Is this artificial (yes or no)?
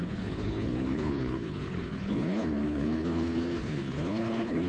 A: yes